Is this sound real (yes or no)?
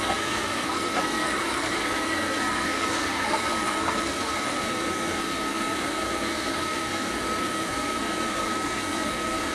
no